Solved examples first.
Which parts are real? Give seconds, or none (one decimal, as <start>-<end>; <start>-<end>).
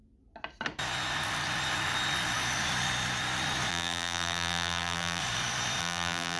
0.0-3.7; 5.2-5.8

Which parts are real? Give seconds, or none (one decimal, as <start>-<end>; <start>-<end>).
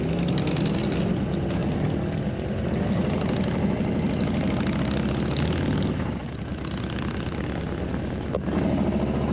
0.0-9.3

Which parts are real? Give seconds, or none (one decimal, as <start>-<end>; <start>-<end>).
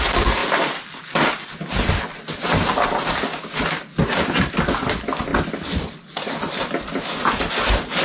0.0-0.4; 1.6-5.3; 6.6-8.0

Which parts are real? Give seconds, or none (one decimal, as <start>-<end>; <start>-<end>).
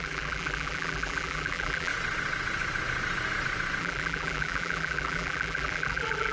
1.9-3.8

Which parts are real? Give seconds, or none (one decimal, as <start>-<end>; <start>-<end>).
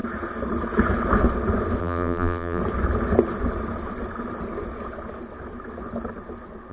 0.0-1.8; 2.6-6.7